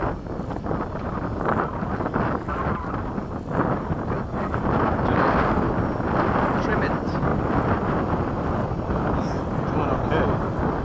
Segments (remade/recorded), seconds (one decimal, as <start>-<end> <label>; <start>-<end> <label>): 0.0-10.8 recorded